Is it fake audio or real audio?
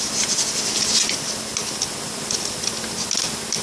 real